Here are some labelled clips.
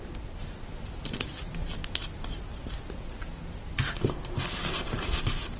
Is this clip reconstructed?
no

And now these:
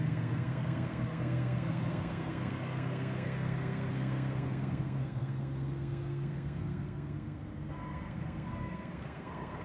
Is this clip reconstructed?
yes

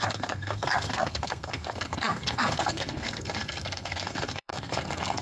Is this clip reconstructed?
yes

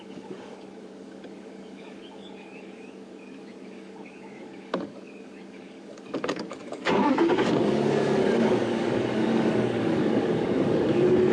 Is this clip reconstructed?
yes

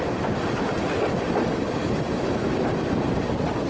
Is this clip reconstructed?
no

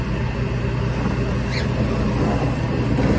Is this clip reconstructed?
no